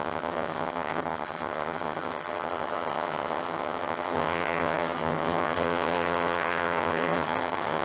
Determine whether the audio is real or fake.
fake